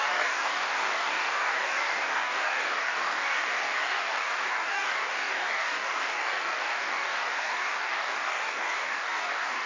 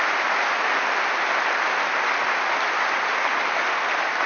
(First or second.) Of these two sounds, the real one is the second